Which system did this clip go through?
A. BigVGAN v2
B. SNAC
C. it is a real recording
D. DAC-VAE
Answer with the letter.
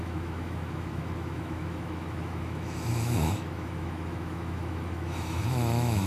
D